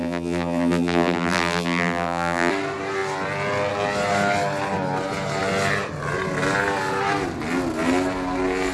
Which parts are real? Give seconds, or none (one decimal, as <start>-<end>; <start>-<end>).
2.5-8.7